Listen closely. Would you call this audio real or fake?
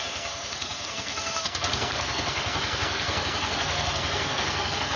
fake